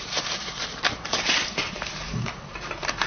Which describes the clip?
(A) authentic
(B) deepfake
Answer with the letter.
B